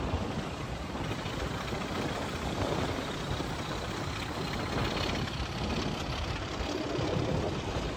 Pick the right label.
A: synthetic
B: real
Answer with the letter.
B